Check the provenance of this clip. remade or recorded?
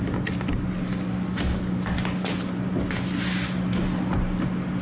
recorded